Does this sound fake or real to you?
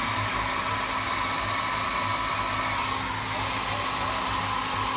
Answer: real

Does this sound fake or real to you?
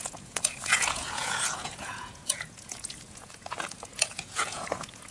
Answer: fake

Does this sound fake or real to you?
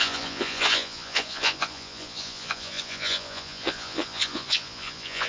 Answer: fake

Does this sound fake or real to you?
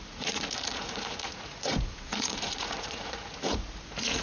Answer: fake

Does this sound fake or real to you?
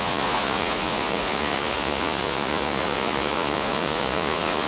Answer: fake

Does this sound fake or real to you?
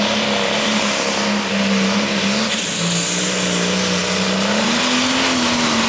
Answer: real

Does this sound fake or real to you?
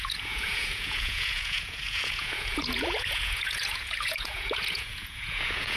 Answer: fake